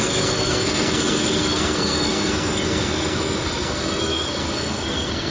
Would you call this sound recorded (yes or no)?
no